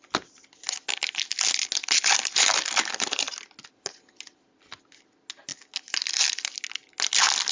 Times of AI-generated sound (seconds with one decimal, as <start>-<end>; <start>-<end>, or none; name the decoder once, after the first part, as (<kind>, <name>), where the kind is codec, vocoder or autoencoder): none